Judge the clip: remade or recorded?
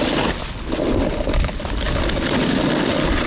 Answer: recorded